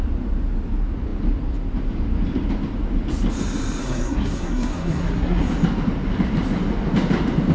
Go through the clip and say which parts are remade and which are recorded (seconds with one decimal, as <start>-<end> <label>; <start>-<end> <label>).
0.0-3.8 recorded; 3.8-5.5 remade; 5.5-7.5 recorded